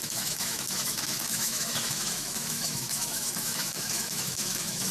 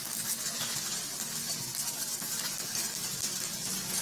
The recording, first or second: second